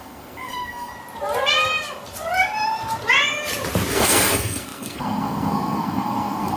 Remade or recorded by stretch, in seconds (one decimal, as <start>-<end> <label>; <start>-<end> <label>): 0.0-0.9 remade; 0.9-3.9 recorded; 3.9-6.6 remade